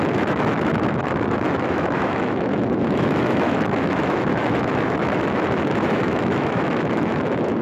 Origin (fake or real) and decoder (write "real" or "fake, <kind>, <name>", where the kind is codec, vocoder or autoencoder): fake, autoencoder, DAC-VAE